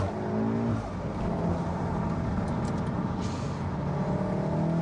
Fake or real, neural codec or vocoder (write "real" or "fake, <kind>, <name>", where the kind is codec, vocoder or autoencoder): real